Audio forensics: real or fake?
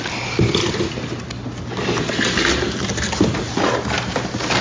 real